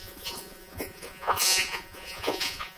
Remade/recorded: remade